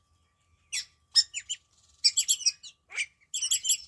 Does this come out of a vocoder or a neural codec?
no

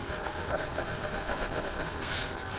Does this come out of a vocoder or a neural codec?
yes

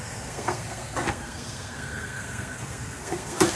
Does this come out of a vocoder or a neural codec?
yes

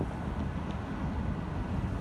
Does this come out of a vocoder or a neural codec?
no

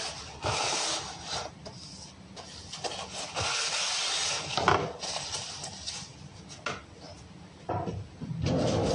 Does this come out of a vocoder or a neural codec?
no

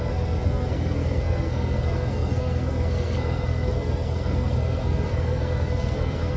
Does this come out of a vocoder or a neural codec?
yes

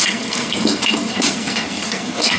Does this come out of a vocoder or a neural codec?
yes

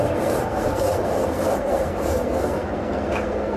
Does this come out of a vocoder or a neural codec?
yes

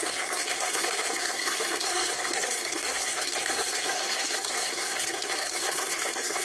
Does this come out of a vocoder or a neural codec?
yes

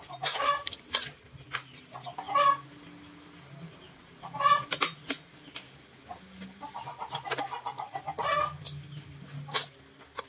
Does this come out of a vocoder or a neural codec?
no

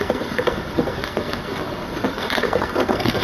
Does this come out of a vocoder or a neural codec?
yes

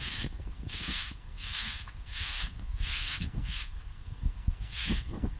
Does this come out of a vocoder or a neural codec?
yes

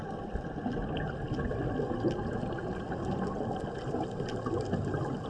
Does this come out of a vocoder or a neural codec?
no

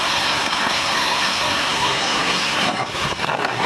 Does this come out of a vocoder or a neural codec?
yes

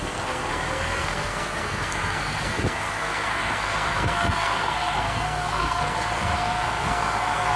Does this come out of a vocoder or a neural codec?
yes